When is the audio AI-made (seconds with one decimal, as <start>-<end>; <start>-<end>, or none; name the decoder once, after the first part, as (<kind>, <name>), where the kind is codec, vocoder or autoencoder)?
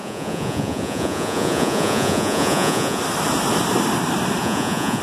0.0-3.0 (vocoder, Vocos); 4.4-5.0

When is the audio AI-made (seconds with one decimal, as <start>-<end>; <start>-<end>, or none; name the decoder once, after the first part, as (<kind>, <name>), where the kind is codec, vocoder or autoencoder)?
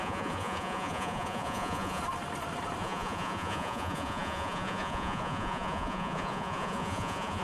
0.0-2.0 (vocoder, Vocos); 2.8-7.4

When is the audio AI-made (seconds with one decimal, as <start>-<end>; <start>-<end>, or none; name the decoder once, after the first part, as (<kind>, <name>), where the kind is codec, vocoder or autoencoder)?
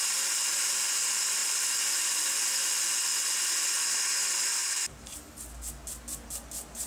4.6-5.3 (vocoder, BigVGAN v2)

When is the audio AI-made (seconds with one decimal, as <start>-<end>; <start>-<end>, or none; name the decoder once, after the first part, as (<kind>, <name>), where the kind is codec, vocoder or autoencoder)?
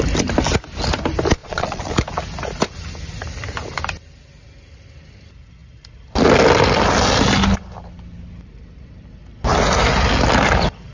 1.4-1.9 (vocoder, Vocos)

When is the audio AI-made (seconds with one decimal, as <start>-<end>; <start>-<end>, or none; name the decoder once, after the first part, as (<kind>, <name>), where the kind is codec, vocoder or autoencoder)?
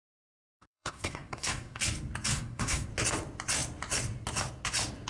0.5-1.8 (codec, SNAC); 2.3-2.9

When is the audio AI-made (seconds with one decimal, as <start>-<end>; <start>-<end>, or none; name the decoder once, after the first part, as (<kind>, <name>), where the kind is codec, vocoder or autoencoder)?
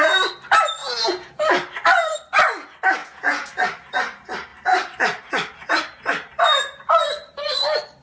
0.8-1.5 (vocoder, Vocos); 3.0-3.5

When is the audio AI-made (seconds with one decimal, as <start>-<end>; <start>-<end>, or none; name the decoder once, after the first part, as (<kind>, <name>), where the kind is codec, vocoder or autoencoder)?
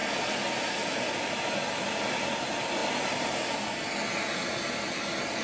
none